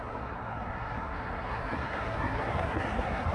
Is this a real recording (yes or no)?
no